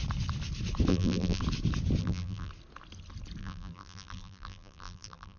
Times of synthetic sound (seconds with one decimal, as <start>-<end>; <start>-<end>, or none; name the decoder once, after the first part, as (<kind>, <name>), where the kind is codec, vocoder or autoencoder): 0.9-1.4 (vocoder, BigVGAN v2); 2.0-2.5; 3.4-5.4